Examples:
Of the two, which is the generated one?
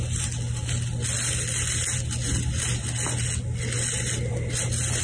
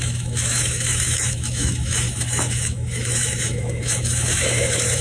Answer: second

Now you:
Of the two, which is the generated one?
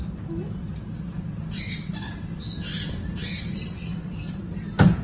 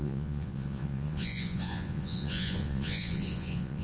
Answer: second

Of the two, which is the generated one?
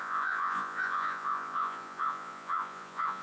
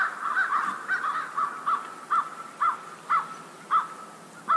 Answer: first